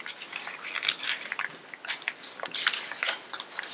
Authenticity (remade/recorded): recorded